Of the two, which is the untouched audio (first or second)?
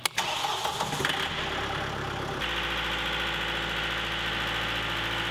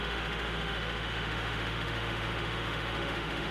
first